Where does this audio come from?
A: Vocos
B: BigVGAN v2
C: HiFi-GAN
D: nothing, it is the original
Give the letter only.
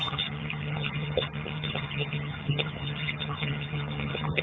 C